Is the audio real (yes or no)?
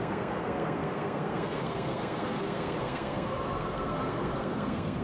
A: no